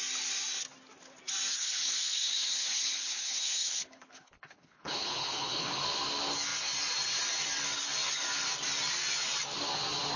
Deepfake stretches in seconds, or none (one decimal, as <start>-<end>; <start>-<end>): 1.5-5.8